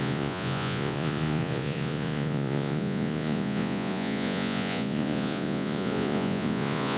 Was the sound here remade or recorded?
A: remade